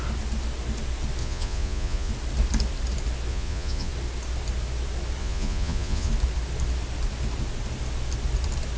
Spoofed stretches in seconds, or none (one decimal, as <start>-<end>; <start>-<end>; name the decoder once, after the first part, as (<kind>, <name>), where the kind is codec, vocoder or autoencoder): 1.2-2.1 (vocoder, Vocos); 3.3-3.9; 5.2-6.1